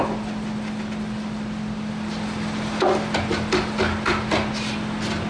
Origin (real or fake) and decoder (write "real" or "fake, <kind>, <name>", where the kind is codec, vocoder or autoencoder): real